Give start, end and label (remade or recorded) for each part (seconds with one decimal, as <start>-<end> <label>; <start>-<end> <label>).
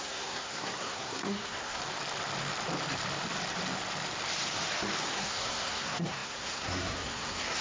0.0-1.8 remade; 1.8-5.0 recorded; 5.0-7.6 remade